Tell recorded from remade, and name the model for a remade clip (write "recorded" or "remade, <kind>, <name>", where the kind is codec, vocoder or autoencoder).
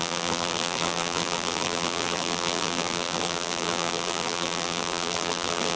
remade, vocoder, BigVGAN v2